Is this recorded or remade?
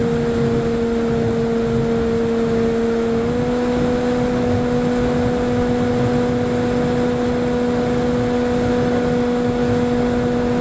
recorded